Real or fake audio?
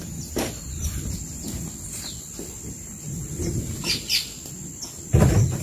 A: real